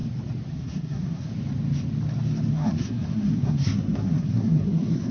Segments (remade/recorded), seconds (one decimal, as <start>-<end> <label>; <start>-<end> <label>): 0.0-0.5 recorded; 0.5-1.3 remade; 1.3-2.5 recorded; 2.5-5.1 remade